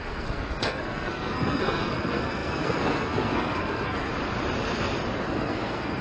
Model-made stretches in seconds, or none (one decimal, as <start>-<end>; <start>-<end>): 0.0-4.1; 5.2-6.0